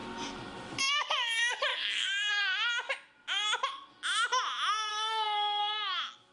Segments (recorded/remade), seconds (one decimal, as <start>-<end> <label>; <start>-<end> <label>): 0.0-1.7 recorded; 1.7-2.3 remade; 2.3-4.9 recorded; 4.9-5.6 remade; 5.6-6.3 recorded